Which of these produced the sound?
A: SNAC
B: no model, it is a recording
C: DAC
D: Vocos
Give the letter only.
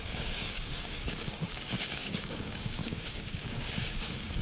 C